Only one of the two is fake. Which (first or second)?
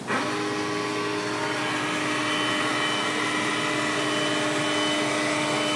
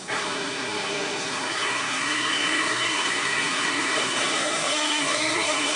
second